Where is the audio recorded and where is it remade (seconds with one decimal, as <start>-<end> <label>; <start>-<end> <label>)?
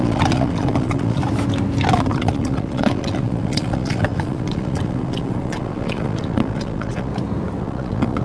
0.0-1.2 remade; 1.2-1.9 recorded; 1.9-7.1 remade; 7.1-7.6 recorded; 7.6-8.2 remade